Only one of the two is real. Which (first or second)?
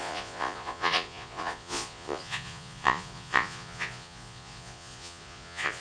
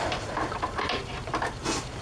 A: second